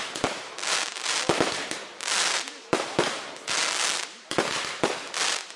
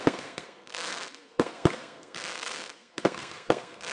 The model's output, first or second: second